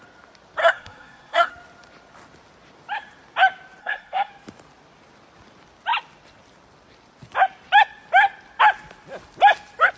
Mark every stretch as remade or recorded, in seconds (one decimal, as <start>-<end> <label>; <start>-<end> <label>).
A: 0.0-0.6 recorded; 0.6-1.5 remade; 1.5-3.8 recorded; 3.8-4.3 remade; 4.3-10.0 recorded